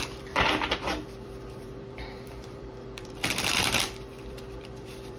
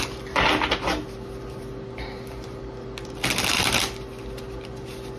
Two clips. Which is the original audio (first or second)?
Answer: second